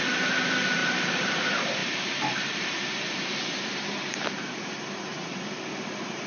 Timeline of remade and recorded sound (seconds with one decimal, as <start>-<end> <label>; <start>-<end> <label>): 0.0-0.8 recorded; 0.8-1.3 remade; 1.3-1.8 recorded; 1.8-4.6 remade; 4.6-5.1 recorded; 5.1-6.3 remade